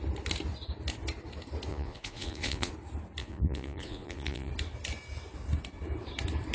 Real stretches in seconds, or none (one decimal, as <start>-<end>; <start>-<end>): 0.0-1.7; 2.7-3.2; 4.5-6.5